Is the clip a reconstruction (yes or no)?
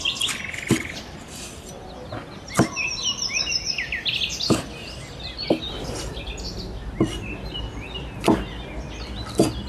no